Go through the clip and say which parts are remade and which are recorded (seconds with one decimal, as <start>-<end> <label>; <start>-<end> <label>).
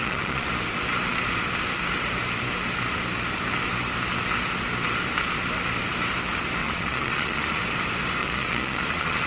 0.0-0.5 remade; 0.5-6.6 recorded; 6.6-7.6 remade; 7.6-8.2 recorded; 8.2-9.3 remade